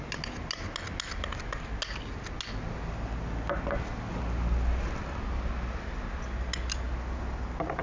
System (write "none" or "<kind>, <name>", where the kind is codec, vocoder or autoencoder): none